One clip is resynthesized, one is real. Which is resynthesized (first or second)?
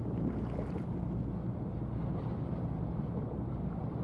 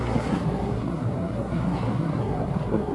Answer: second